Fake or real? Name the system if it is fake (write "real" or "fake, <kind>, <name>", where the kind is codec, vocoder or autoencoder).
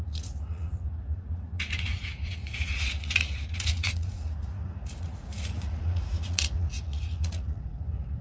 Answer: fake, vocoder, Vocos